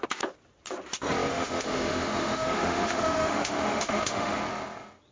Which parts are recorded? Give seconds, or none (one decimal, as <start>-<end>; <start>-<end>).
0.0-1.3; 4.4-5.1